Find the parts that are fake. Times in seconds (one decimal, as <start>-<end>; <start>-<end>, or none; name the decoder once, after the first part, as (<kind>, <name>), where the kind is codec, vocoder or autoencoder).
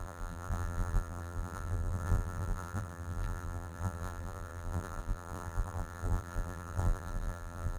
0.0-7.8 (vocoder, BigVGAN v2)